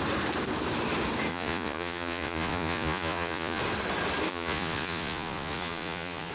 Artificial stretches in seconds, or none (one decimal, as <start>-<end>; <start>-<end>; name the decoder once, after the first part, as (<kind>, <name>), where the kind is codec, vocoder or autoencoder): 1.3-3.6 (vocoder, Vocos); 4.3-6.3